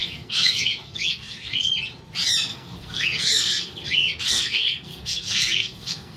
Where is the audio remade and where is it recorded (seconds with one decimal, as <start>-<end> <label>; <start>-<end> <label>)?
0.0-1.7 remade; 1.7-2.5 recorded; 2.5-6.2 remade